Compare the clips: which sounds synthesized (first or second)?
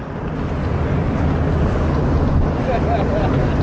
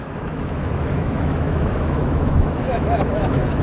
second